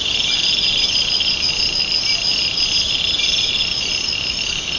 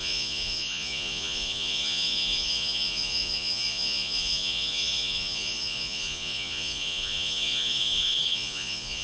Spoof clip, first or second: second